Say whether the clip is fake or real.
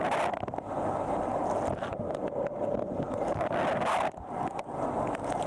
real